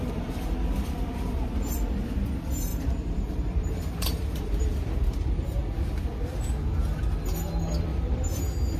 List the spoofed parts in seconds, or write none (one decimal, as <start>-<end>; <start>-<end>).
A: 0.0-0.9; 2.7-5.6; 7.9-8.4